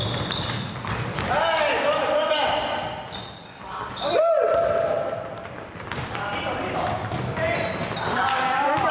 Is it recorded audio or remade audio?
recorded